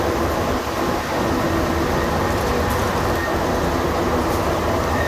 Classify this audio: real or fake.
real